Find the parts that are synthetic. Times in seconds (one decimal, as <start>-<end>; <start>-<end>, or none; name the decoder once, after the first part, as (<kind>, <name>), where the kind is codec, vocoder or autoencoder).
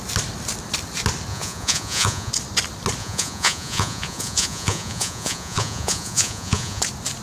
1.3-2.3 (vocoder, Vocos); 3.0-6.8